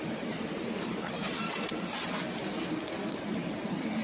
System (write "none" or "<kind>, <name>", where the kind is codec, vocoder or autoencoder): none